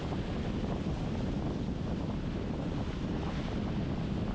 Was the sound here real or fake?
real